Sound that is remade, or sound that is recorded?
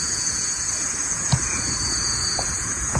remade